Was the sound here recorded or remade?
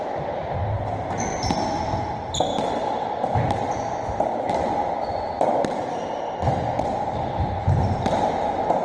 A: recorded